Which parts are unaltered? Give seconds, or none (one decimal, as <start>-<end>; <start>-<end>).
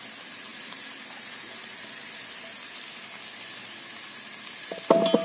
0.0-5.2